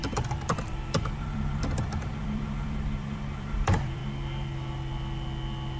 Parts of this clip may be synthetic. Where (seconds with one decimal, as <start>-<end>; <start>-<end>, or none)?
0.0-4.0